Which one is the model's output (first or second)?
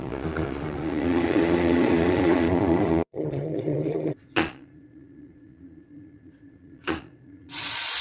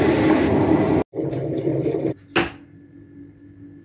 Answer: first